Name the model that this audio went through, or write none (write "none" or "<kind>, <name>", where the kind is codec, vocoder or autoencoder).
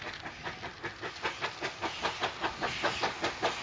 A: none